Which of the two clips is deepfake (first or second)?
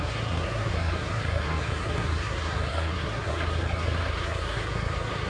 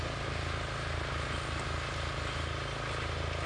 first